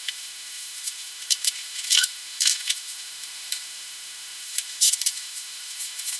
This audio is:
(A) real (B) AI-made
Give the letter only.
B